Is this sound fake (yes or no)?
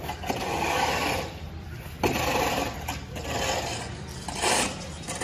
no